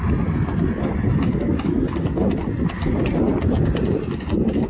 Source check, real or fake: real